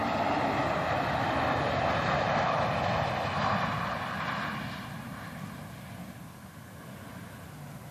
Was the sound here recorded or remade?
recorded